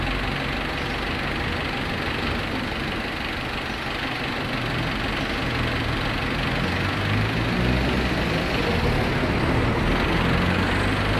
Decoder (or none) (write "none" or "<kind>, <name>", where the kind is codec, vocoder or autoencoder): none